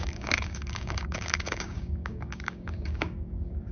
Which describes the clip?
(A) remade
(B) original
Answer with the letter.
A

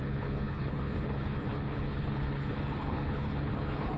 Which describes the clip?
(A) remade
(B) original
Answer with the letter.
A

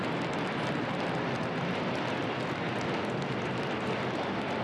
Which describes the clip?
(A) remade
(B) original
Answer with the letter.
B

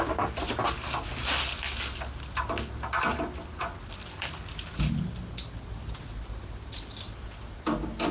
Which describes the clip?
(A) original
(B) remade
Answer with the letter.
A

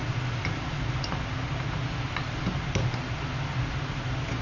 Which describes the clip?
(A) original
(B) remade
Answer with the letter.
A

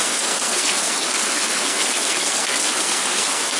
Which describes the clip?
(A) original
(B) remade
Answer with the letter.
B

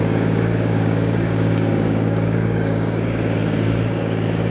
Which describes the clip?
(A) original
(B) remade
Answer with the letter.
B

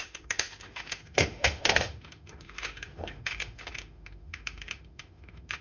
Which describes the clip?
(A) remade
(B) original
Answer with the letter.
A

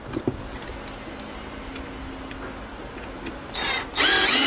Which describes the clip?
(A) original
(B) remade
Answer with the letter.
A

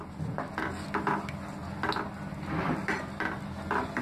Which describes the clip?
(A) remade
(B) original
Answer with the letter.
B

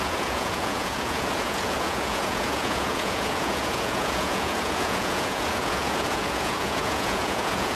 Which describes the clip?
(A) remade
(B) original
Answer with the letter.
A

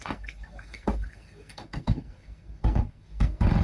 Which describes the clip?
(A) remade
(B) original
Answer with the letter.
A